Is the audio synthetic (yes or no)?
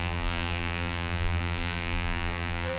yes